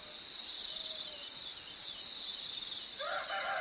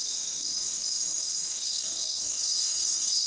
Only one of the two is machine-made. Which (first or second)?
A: second